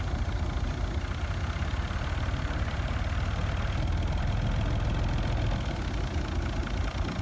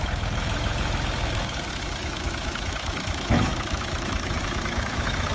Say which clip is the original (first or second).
first